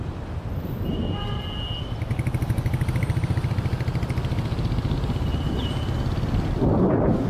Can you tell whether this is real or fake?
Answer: real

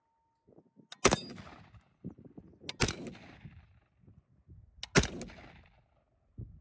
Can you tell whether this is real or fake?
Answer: real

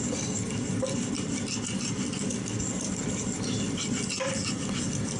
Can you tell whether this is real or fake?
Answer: real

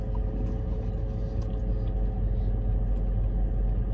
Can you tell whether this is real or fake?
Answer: real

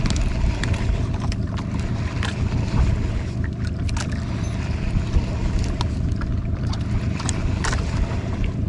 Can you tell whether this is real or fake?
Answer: real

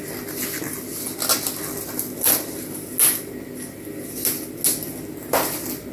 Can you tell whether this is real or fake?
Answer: real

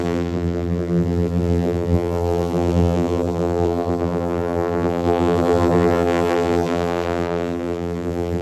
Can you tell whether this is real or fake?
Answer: fake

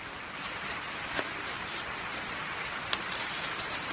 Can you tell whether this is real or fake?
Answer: real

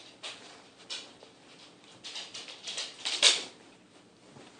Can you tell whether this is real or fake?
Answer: fake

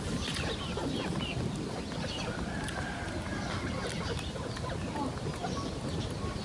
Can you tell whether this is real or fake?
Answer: real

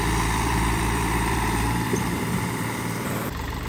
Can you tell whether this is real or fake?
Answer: fake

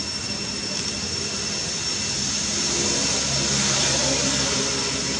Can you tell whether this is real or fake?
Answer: real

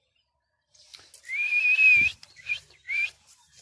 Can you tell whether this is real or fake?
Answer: fake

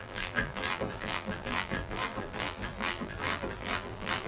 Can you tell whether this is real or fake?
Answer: fake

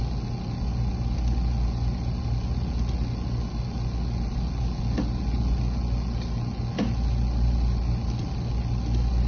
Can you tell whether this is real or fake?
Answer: real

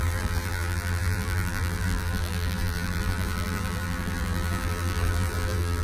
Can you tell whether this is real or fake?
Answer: fake